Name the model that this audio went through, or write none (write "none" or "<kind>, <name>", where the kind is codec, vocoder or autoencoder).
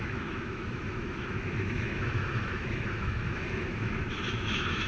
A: autoencoder, DAC-VAE